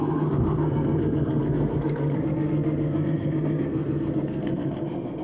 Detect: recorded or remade remade